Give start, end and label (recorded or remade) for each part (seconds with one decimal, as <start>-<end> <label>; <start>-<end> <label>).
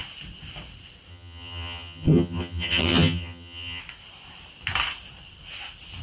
0.0-1.1 recorded; 1.1-3.8 remade; 3.8-6.0 recorded